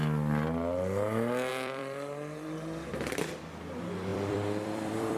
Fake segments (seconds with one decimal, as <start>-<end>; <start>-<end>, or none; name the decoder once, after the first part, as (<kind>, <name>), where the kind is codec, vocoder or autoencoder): 1.5-3.2 (vocoder, BigVGAN v2); 4.1-5.2